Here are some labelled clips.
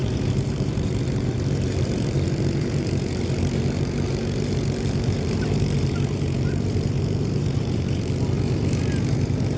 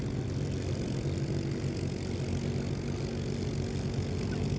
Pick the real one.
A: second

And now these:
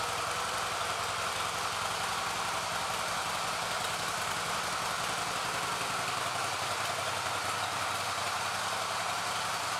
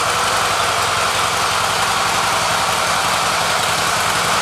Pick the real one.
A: second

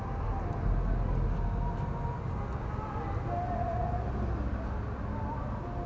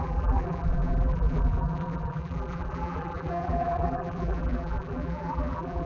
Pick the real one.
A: first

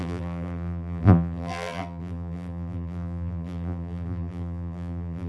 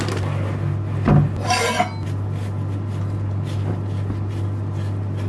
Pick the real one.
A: second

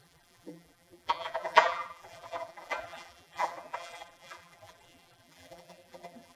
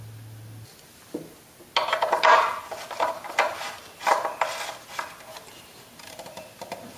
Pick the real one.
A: second